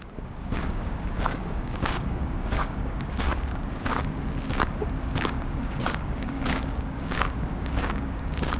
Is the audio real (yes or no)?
no